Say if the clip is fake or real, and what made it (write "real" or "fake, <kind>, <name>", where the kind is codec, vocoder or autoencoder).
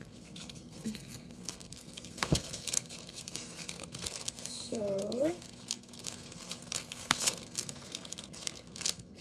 fake, codec, SNAC